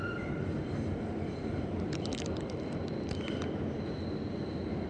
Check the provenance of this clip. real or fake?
real